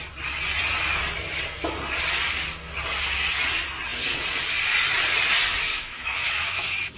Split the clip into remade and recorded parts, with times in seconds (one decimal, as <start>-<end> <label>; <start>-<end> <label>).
0.0-5.7 recorded; 5.7-7.0 remade